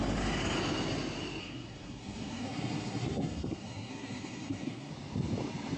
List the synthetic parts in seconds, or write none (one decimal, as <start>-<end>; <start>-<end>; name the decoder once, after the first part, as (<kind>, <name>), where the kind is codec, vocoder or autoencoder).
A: 1.4-4.9 (codec, SNAC)